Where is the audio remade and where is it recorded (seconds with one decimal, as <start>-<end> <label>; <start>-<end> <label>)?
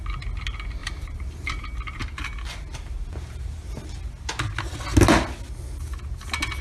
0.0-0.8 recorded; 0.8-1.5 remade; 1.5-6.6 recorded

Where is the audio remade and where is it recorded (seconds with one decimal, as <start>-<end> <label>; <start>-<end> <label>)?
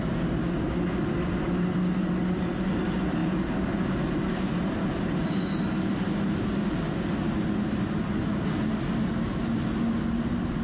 0.0-10.6 recorded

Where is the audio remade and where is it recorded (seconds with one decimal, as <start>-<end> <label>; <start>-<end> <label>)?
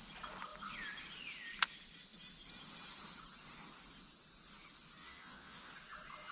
0.0-5.0 recorded; 5.0-5.7 remade; 5.7-6.3 recorded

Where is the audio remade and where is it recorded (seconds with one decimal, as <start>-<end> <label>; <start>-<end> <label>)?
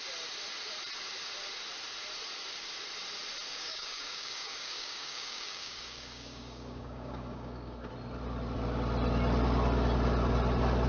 0.0-3.5 recorded; 3.5-7.9 remade; 7.9-10.9 recorded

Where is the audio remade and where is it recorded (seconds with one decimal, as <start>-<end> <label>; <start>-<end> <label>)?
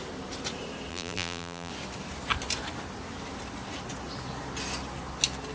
0.0-0.9 recorded; 0.9-1.7 remade; 1.7-5.5 recorded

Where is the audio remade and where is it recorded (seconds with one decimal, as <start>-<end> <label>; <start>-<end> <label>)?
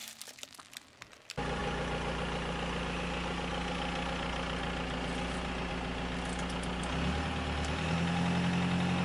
0.0-9.0 recorded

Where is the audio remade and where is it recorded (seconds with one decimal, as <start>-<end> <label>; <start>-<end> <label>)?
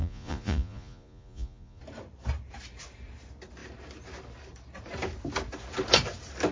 0.0-1.8 remade; 1.8-6.5 recorded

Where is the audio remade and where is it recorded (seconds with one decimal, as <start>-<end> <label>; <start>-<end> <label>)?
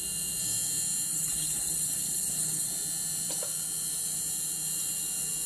0.0-1.1 recorded; 1.1-2.7 remade; 2.7-5.5 recorded